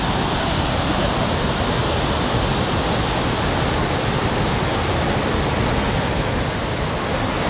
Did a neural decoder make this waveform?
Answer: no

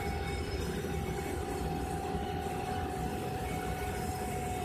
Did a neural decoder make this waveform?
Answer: yes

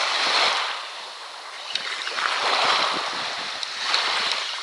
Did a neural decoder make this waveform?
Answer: no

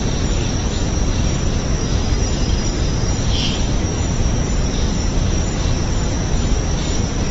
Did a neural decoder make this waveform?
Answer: no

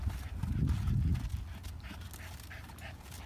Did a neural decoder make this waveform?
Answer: no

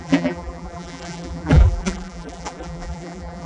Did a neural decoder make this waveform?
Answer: yes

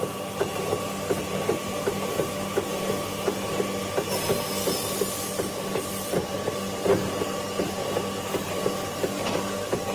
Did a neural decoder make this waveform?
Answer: no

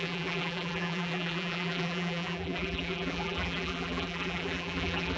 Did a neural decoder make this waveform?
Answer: yes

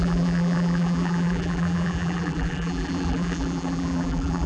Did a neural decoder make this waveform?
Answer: yes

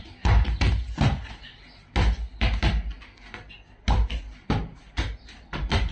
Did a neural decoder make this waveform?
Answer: no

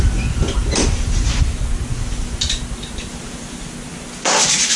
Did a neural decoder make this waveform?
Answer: no